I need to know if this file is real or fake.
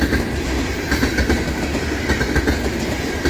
real